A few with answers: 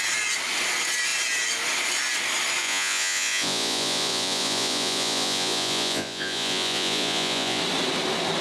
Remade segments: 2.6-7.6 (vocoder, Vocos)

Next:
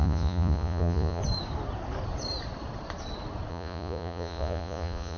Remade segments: 0.0-1.2 (vocoder, Vocos); 3.5-5.2

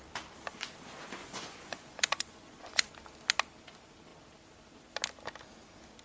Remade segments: 1.2-2.9 (vocoder, Vocos)

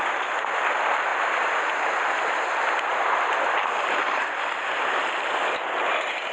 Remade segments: none